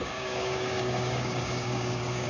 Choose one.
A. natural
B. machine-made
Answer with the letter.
B